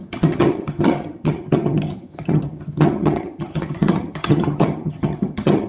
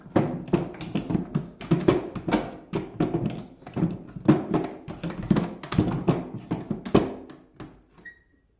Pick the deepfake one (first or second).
first